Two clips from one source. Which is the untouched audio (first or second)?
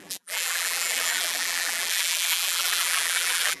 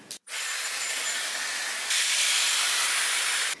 second